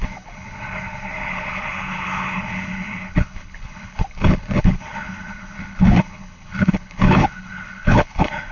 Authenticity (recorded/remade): remade